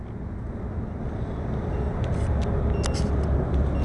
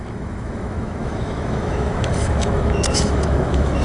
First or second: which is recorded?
first